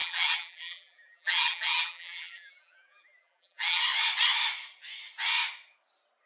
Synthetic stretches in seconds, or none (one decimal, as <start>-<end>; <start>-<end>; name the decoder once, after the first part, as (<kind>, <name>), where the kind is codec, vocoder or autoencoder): 0.0-3.8 (vocoder, BigVGAN v2)